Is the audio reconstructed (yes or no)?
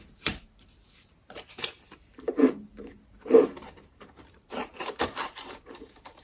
yes